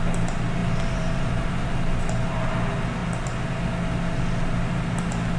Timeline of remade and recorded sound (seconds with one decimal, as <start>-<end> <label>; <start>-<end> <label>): 0.0-0.6 recorded; 0.6-2.0 remade; 2.0-5.4 recorded